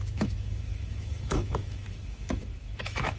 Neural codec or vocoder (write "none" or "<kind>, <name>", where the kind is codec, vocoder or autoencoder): autoencoder, DAC-VAE